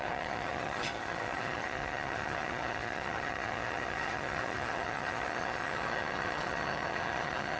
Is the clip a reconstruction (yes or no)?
yes